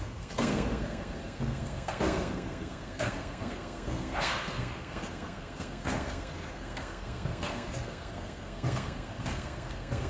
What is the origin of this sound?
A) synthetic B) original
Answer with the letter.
A